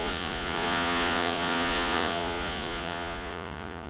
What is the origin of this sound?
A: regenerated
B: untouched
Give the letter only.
A